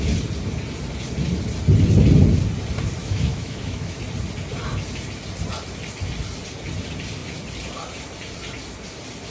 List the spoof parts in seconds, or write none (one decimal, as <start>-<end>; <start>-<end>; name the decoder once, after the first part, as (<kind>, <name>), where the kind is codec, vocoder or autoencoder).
3.0-4.0 (autoencoder, DAC-VAE)